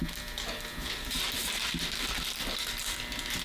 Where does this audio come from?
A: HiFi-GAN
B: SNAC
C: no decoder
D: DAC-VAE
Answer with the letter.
C